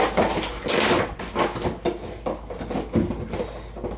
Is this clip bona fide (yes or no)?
yes